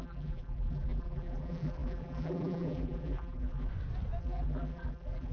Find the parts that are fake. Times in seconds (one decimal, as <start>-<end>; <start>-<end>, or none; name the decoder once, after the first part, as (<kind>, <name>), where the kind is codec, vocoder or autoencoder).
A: 0.0-3.7 (vocoder, BigVGAN v2); 4.2-5.3